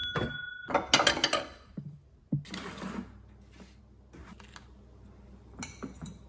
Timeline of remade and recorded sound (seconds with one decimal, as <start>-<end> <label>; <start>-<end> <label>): 0.0-6.3 recorded